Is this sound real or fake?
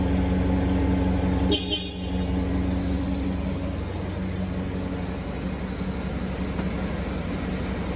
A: real